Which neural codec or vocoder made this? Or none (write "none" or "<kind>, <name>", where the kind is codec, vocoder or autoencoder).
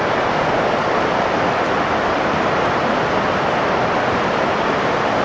none